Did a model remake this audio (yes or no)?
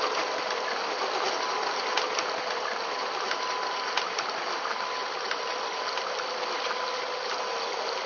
no